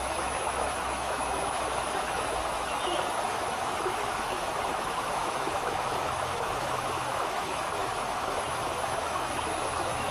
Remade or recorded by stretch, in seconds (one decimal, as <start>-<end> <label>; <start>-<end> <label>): 0.0-10.1 remade